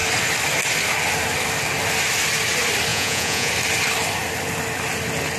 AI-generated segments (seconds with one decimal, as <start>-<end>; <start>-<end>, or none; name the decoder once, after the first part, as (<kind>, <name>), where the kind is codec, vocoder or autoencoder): 2.9-3.5 (vocoder, Vocos)